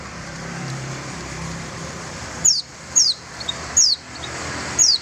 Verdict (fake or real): fake